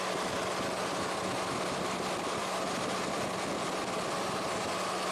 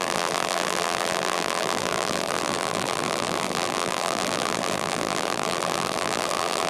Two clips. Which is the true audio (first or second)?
first